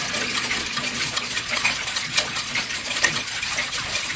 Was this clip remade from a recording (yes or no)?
yes